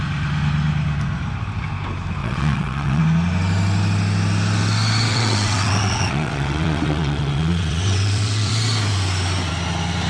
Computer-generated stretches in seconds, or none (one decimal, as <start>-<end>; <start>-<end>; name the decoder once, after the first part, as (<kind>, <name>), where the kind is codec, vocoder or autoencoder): 2.2-3.0 (vocoder, WaveNeXt); 5.1-8.5

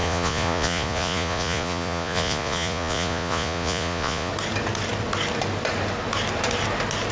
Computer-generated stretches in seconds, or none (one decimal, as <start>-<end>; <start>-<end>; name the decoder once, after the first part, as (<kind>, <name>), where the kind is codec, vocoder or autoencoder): 0.0-4.3 (vocoder, Vocos)

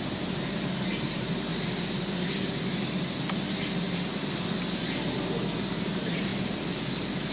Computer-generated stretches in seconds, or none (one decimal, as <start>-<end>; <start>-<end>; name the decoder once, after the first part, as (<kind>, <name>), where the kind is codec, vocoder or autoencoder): 0.0-1.5 (vocoder, BigVGAN v2); 5.8-6.3